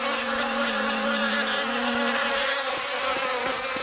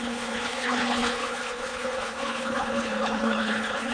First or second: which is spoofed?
second